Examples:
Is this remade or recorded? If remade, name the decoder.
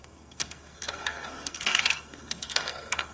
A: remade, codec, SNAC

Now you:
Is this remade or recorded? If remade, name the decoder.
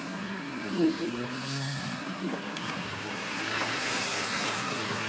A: remade, codec, SNAC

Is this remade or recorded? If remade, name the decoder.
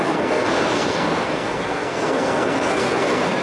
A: remade, codec, SNAC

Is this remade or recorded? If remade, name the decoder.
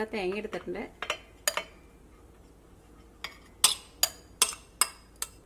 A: recorded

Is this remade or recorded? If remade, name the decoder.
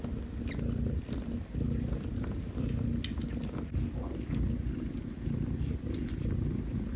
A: recorded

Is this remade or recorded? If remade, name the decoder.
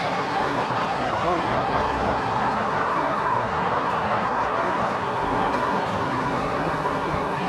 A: remade, codec, SNAC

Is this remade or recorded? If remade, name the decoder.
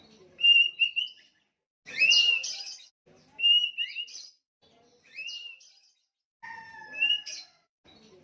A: recorded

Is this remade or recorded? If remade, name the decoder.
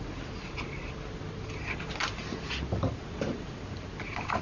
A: recorded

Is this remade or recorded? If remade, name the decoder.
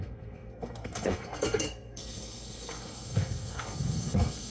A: remade, codec, SNAC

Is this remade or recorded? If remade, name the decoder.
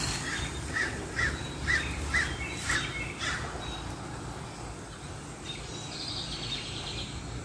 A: recorded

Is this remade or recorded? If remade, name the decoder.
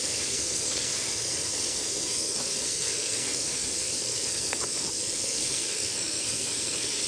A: remade, codec, SNAC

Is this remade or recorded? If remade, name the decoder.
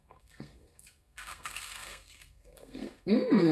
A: remade, codec, SNAC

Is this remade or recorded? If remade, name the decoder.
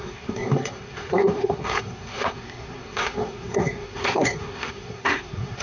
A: remade, codec, SNAC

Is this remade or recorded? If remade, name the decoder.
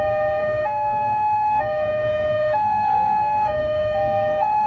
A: remade, codec, SNAC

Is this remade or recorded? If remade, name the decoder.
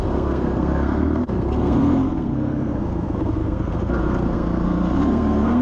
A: remade, codec, SNAC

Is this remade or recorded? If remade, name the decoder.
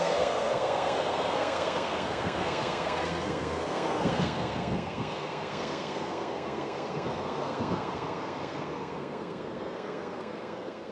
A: remade, codec, SNAC